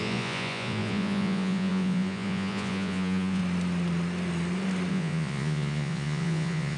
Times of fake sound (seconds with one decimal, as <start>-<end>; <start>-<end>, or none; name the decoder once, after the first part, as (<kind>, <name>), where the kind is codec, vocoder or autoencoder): 0.0-3.4 (vocoder, Vocos); 4.9-6.8